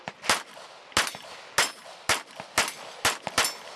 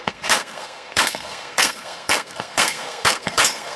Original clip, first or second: first